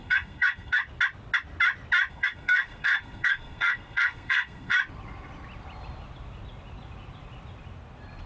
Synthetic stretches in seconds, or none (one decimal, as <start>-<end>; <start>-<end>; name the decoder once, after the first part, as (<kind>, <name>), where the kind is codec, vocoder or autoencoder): 0.0-0.8 (codec, SNAC); 2.1-4.7